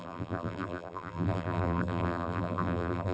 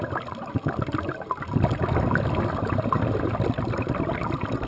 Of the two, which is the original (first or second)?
second